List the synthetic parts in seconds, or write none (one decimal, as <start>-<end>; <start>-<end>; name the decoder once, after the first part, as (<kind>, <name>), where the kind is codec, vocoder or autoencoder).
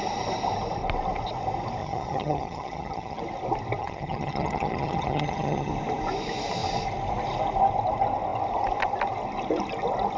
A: 1.8-3.2 (vocoder, HiFi-GAN); 3.8-5.7